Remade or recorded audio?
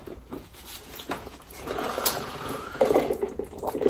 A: remade